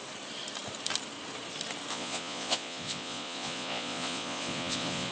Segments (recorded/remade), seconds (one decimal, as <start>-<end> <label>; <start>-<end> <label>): 0.0-1.9 recorded; 1.9-5.1 remade

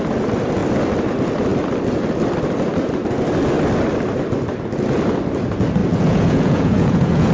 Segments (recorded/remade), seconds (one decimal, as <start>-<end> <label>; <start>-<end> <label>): 0.0-5.8 recorded; 5.8-7.3 remade

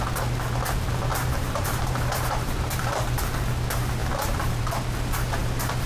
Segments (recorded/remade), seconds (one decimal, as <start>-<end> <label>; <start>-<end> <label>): 0.0-1.1 recorded; 1.1-3.2 remade; 3.2-4.0 recorded; 4.0-4.6 remade; 4.6-5.4 recorded; 5.4-5.9 remade

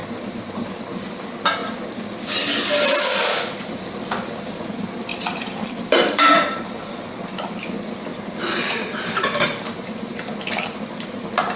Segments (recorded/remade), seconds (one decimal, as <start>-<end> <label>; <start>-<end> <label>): 0.0-0.8 remade; 0.8-1.6 recorded; 1.6-2.1 remade; 2.1-5.1 recorded; 5.1-6.8 remade; 6.8-8.1 recorded; 8.1-11.1 remade; 11.1-11.6 recorded

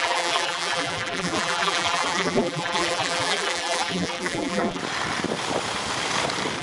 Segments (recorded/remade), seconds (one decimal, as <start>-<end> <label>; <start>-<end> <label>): 0.0-4.8 remade; 4.8-6.6 recorded

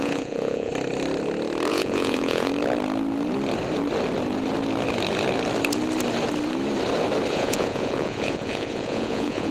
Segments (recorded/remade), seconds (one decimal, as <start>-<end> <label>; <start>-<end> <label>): 0.0-0.7 remade; 0.7-1.7 recorded; 1.7-2.5 remade; 2.5-7.3 recorded; 7.3-9.5 remade

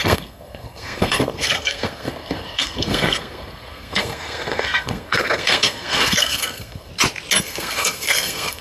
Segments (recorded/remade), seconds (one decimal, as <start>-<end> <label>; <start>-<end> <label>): 0.0-6.9 remade; 6.9-7.4 recorded; 7.4-8.6 remade

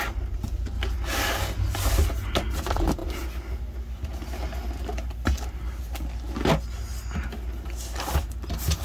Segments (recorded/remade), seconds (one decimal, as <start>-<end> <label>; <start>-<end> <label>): 0.0-8.8 recorded